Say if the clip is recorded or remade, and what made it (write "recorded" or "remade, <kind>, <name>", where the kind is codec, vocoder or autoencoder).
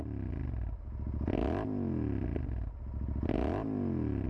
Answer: recorded